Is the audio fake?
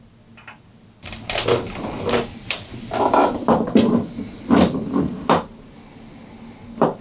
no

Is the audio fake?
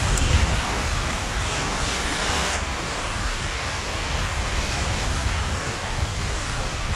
yes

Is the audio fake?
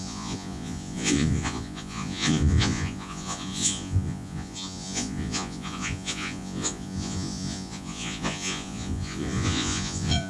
yes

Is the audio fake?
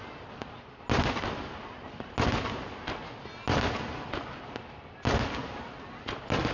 no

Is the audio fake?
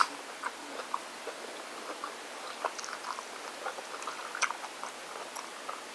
no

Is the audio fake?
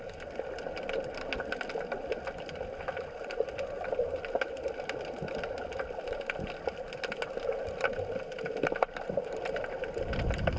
no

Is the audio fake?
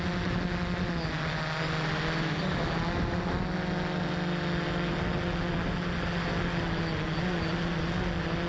no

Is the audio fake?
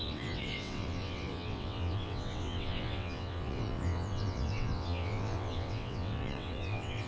yes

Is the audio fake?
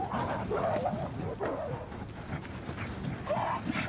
no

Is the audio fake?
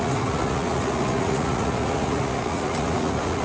yes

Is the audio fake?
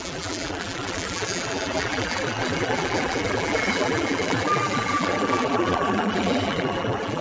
yes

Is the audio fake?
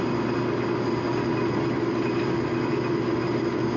no